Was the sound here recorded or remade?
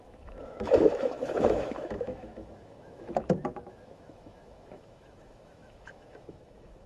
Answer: remade